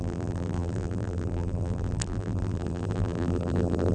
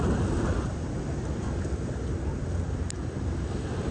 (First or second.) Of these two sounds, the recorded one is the second